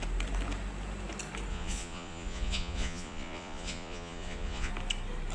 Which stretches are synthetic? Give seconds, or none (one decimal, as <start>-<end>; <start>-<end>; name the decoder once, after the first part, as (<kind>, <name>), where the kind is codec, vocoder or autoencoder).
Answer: 1.5-4.7 (vocoder, Vocos)